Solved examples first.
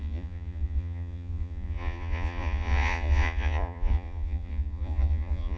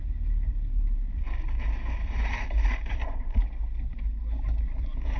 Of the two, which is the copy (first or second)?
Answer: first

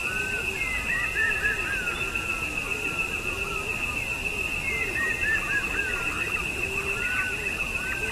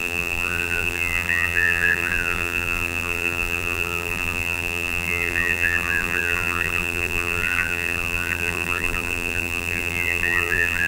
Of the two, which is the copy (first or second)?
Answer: second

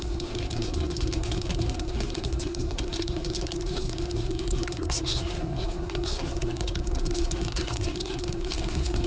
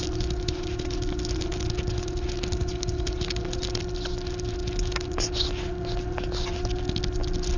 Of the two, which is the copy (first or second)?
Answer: first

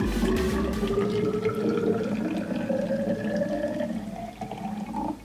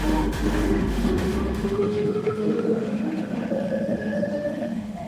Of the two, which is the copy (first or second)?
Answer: second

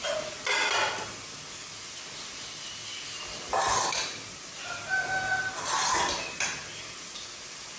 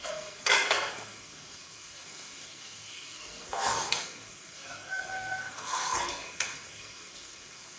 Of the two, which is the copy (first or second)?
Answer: second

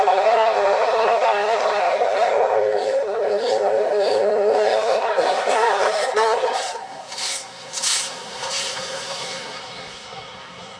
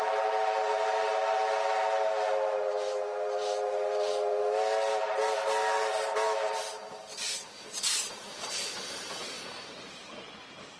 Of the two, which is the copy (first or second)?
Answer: first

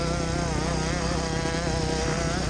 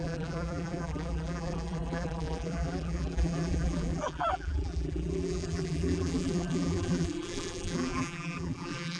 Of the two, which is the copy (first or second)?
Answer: second